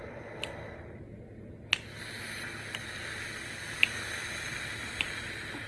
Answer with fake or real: real